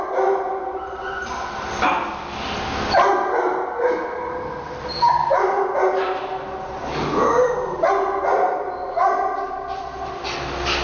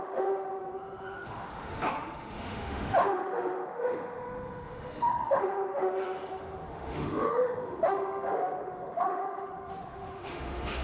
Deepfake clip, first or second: second